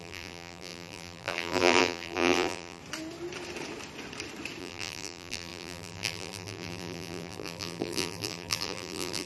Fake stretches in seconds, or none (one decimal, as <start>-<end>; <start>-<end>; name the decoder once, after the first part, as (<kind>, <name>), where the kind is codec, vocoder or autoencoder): 0.0-2.8 (vocoder, BigVGAN v2); 4.6-9.3